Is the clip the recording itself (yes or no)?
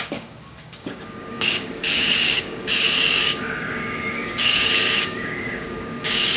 no